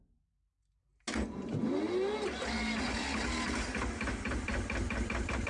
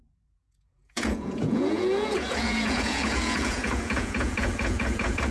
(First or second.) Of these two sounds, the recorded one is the first